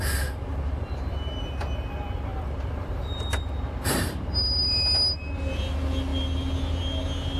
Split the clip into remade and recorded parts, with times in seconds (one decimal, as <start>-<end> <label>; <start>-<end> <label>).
0.0-0.5 recorded; 0.5-1.9 remade; 1.9-2.3 recorded; 2.3-3.4 remade; 3.4-7.4 recorded